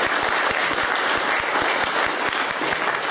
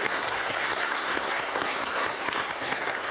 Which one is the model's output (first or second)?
second